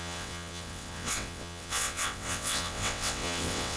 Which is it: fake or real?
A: fake